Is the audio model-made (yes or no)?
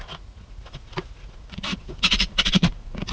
yes